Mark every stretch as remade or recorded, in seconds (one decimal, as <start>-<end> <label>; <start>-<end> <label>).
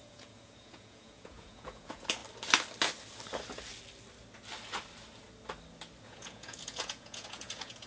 0.0-2.2 remade; 2.2-6.0 recorded; 6.0-7.9 remade